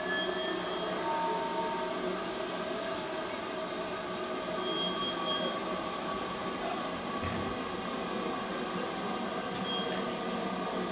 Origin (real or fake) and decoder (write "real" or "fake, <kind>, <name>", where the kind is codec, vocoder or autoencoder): real